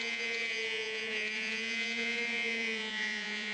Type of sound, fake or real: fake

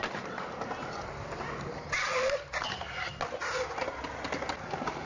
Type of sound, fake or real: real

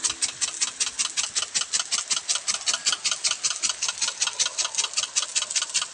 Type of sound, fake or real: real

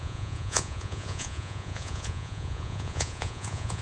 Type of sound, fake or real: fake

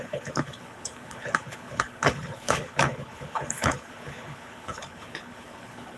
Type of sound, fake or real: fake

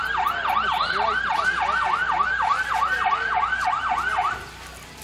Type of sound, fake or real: real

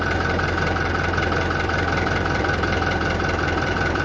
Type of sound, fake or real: fake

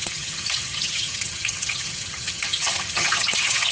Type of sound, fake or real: fake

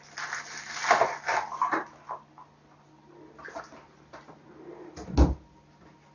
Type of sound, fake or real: real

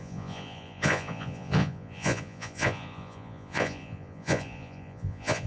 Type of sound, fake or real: fake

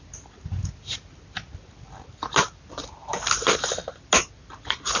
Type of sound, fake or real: real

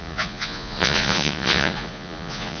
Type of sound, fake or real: fake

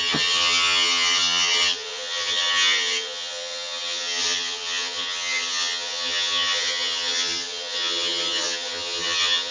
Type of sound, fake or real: fake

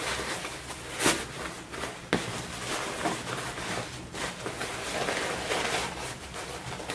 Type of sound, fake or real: real